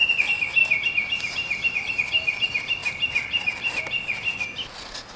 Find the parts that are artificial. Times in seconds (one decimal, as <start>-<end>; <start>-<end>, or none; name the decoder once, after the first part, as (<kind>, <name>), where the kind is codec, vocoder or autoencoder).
0.6-1.9 (vocoder, BigVGAN v2)